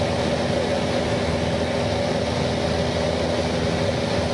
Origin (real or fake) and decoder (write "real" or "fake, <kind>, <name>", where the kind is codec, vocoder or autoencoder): real